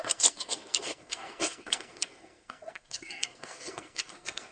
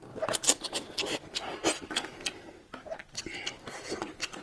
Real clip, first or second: second